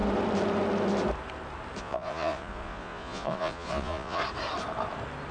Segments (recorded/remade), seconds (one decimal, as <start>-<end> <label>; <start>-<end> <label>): 0.0-1.8 recorded; 1.8-4.2 remade; 4.2-5.3 recorded